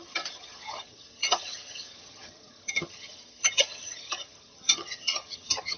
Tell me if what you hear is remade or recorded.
remade